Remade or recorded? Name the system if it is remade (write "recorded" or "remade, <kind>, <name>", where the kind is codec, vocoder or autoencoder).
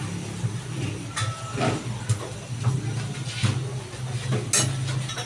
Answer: recorded